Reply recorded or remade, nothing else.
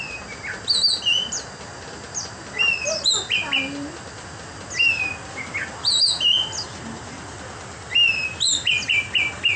recorded